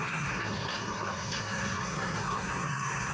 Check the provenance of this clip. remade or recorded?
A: remade